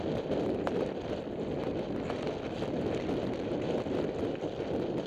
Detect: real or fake real